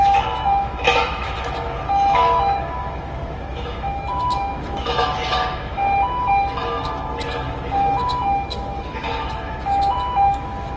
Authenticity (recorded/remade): remade